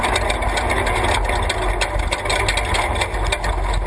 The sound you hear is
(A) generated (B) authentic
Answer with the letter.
B